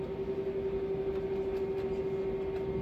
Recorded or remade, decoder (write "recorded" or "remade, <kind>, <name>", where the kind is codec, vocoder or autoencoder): recorded